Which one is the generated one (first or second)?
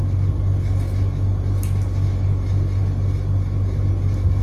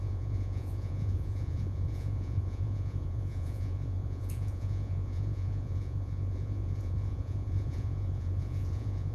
second